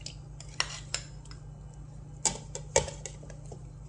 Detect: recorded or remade recorded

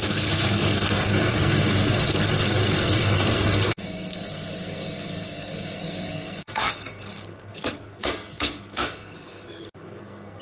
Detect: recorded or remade remade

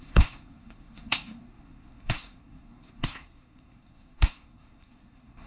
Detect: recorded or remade remade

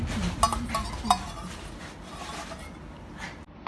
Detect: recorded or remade recorded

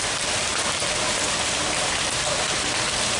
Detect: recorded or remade recorded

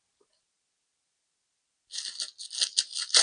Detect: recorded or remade recorded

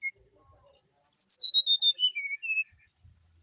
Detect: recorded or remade recorded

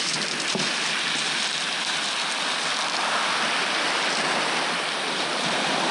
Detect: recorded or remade recorded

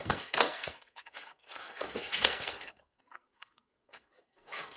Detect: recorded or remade remade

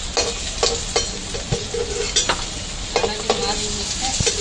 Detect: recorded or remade recorded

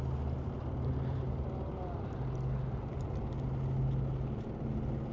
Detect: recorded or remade recorded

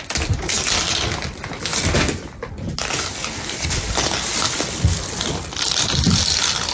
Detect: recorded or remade recorded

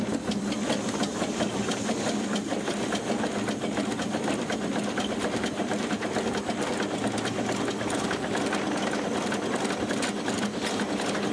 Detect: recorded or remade recorded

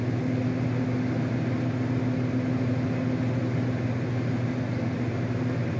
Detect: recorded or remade recorded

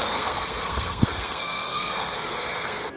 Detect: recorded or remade remade